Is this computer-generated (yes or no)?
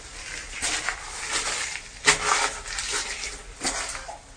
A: no